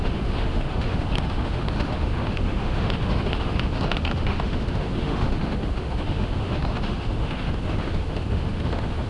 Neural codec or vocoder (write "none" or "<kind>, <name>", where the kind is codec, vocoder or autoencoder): autoencoder, DAC-VAE